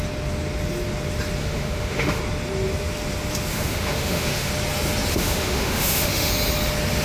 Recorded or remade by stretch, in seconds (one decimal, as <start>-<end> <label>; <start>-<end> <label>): 0.0-1.4 recorded; 1.4-2.2 remade; 2.2-3.5 recorded; 3.5-4.5 remade; 4.5-5.1 recorded; 5.1-6.3 remade; 6.3-7.0 recorded